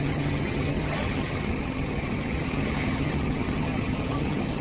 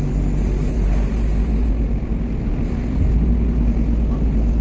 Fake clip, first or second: first